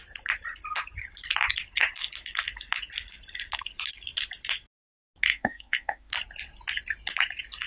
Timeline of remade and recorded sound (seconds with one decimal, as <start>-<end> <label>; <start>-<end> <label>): 0.0-5.3 recorded; 5.3-6.1 remade; 6.1-7.7 recorded